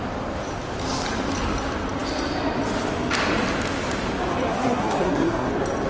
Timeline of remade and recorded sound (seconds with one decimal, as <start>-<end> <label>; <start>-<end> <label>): 0.0-4.5 recorded; 4.5-5.5 remade; 5.5-5.9 recorded

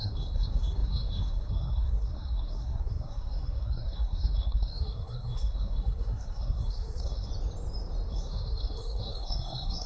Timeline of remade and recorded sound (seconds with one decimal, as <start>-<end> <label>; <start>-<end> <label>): 0.0-7.3 remade; 7.3-8.1 recorded; 8.1-9.9 remade

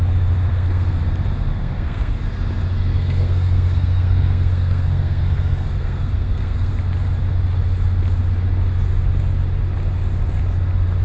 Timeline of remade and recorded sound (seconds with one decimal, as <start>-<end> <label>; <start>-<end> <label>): 0.0-0.5 recorded; 0.5-1.0 remade; 1.0-1.5 recorded; 1.5-2.1 remade; 2.1-2.9 recorded; 2.9-6.7 remade; 6.7-11.0 recorded